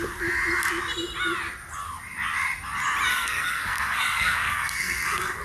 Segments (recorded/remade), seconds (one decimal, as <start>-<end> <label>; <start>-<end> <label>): 0.0-3.1 recorded; 3.1-5.4 remade